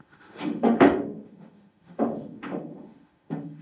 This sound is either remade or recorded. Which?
remade